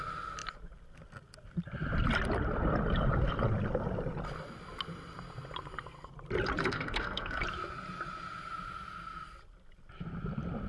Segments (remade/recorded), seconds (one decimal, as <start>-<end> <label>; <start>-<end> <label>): 0.0-6.6 recorded; 6.6-7.4 remade; 7.4-10.7 recorded